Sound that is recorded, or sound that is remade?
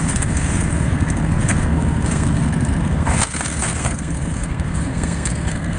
remade